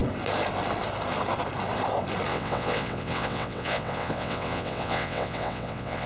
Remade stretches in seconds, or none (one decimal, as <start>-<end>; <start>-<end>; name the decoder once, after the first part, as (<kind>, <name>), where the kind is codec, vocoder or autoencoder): 2.3-6.1 (vocoder, WaveNeXt)